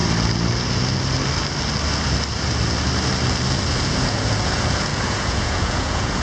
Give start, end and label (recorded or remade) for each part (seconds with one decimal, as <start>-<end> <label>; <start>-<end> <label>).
0.0-3.7 recorded; 3.7-6.2 remade